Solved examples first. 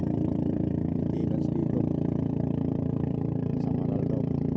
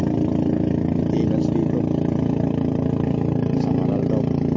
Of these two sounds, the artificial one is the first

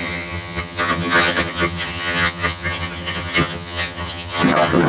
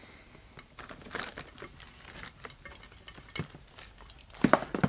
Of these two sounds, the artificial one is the first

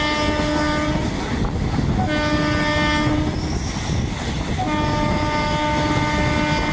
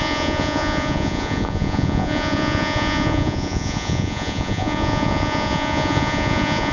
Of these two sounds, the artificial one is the second